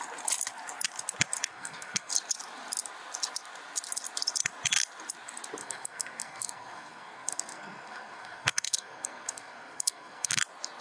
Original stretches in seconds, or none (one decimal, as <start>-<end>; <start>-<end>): 0.0-1.5; 2.1-5.6; 10.4-10.8